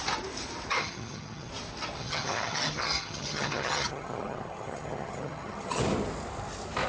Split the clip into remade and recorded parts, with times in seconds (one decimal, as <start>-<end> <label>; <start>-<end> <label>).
0.0-0.8 recorded; 0.8-1.5 remade; 1.5-2.0 recorded; 2.0-5.8 remade; 5.8-6.9 recorded